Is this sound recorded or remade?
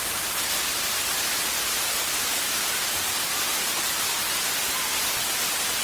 recorded